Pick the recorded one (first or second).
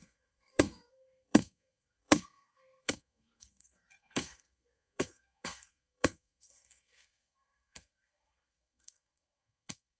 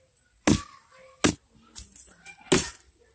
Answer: second